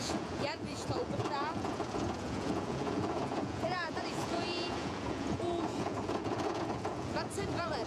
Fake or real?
fake